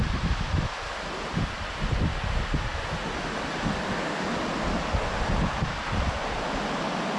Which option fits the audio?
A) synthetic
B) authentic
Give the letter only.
B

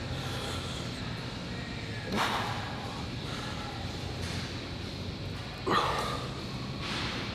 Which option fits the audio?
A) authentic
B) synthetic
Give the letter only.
A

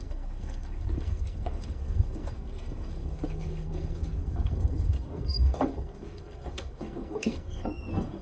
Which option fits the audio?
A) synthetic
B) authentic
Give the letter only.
A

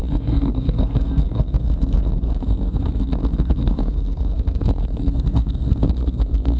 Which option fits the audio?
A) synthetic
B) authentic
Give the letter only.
A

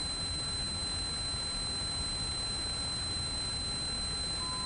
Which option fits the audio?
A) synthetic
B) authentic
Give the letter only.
B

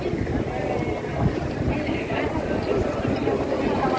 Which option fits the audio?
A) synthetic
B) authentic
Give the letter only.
B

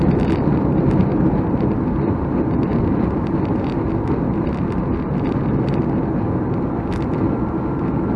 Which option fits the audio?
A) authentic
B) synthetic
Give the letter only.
A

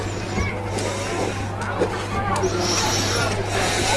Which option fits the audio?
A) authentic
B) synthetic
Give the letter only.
A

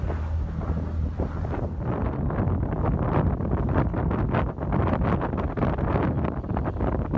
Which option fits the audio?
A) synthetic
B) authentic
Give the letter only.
B